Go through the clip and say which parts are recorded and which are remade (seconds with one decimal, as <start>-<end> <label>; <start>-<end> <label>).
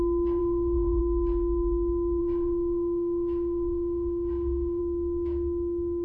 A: 0.0-0.4 recorded; 0.4-1.0 remade; 1.0-2.2 recorded; 2.2-4.8 remade; 4.8-6.0 recorded